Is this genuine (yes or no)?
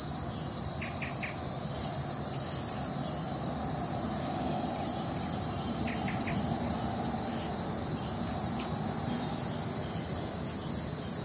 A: yes